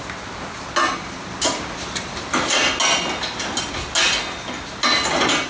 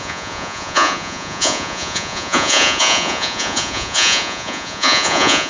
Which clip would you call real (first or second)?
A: first